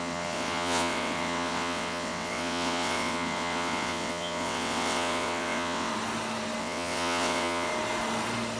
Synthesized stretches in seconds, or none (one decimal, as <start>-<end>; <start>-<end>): 0.0-5.9; 6.6-7.7

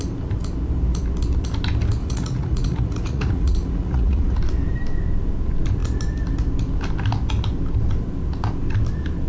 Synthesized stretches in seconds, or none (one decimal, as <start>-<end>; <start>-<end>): 2.0-4.4

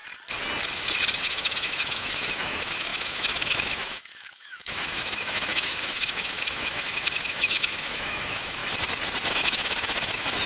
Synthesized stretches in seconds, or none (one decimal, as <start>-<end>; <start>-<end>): 1.2-8.6; 9.3-10.5

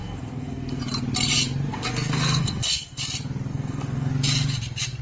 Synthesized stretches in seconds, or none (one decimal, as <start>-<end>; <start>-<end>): 0.0-0.8; 1.7-3.0; 3.5-4.1

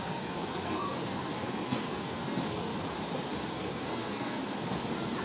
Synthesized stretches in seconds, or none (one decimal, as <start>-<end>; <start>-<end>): 0.0-2.7; 3.5-4.4

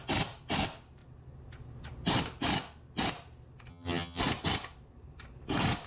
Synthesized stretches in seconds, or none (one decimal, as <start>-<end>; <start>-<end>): 3.7-4.2